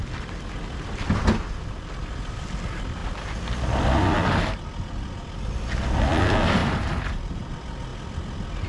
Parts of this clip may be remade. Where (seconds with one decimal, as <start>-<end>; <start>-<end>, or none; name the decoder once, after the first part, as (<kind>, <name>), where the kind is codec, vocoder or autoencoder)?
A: 6.6-7.5 (vocoder, BigVGAN v2)